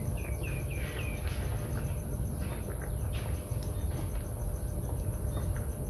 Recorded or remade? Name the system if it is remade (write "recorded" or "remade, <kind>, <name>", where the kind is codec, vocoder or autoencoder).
recorded